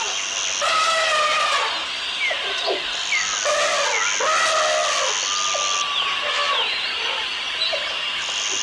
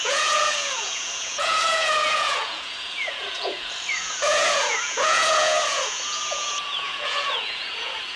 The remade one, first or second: second